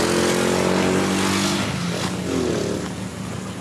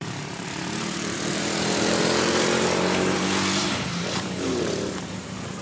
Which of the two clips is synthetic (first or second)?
second